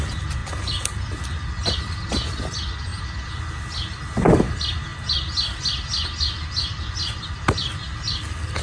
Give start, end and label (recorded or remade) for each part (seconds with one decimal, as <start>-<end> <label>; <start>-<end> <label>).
0.0-8.6 recorded